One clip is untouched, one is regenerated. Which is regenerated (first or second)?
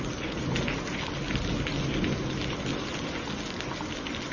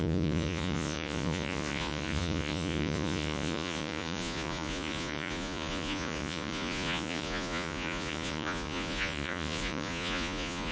second